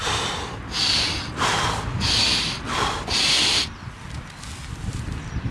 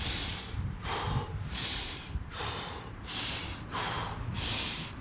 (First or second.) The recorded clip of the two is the first